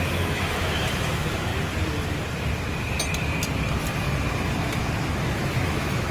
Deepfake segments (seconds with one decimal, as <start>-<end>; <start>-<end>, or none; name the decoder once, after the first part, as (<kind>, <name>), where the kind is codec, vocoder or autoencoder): 0.0-1.5 (autoencoder, DAC-VAE); 4.5-6.1